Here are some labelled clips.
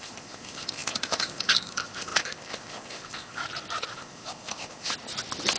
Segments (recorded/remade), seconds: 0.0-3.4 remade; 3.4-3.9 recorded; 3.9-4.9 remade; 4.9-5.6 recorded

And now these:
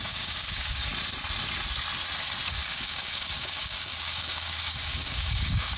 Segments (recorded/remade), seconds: 0.0-0.9 remade; 0.9-2.5 recorded; 2.5-5.8 remade

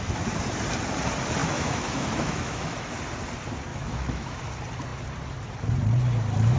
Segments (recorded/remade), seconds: 0.0-1.4 recorded; 1.4-2.9 remade; 2.9-3.7 recorded; 3.7-4.4 remade; 4.4-6.6 recorded

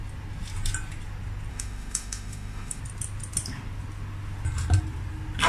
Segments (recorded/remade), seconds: 0.0-1.5 recorded; 1.5-2.8 remade; 2.8-5.5 recorded